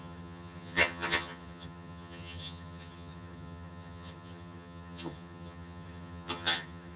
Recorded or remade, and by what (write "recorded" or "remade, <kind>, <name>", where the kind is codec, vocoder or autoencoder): remade, vocoder, HiFi-GAN